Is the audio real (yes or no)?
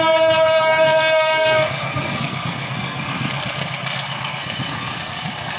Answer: no